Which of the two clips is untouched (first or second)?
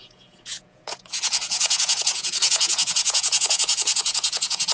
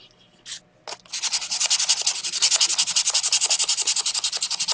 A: second